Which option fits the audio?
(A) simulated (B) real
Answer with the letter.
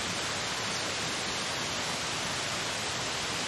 B